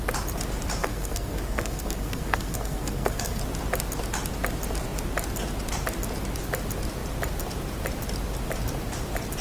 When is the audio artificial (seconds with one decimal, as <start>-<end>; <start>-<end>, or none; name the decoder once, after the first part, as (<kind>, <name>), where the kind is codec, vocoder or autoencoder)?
0.8-3.4 (codec, SNAC)